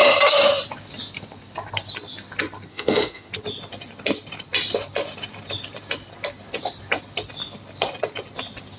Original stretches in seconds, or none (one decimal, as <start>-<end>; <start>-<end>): 0.0-2.7; 3.3-8.8